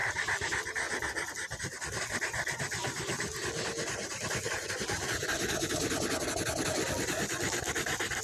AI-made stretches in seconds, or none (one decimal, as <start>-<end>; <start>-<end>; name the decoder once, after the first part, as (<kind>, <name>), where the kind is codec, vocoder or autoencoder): none